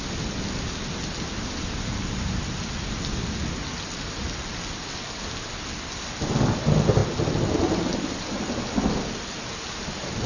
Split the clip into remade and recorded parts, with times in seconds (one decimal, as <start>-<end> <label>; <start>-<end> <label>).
0.0-10.3 recorded

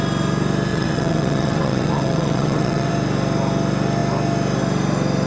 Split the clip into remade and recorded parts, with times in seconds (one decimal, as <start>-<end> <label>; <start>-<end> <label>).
0.0-0.7 recorded; 0.7-2.9 remade; 2.9-5.3 recorded

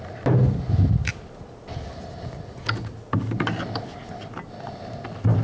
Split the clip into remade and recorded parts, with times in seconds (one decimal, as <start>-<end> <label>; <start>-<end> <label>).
0.0-5.4 recorded

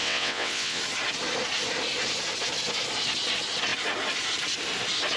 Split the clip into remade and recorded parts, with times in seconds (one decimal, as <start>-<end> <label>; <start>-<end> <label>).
0.0-0.8 remade; 0.8-5.2 recorded

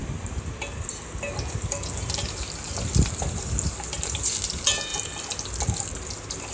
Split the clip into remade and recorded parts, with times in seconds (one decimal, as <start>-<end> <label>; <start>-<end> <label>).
0.0-6.5 recorded

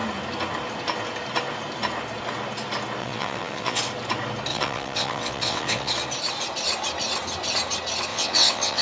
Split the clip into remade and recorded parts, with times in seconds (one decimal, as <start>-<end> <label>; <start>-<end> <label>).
0.0-3.0 recorded; 3.0-3.8 remade; 3.8-4.5 recorded; 4.5-5.9 remade; 5.9-8.1 recorded; 8.1-8.8 remade